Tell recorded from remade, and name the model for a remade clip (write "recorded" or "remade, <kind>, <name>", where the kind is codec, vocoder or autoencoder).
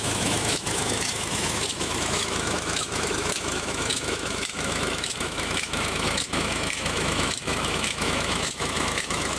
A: remade, autoencoder, DAC-VAE